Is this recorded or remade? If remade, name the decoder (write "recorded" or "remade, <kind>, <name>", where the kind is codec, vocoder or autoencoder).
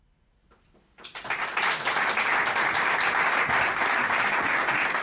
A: recorded